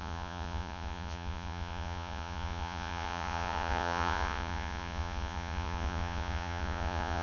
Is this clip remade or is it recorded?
remade